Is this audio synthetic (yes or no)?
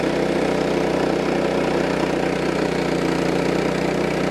no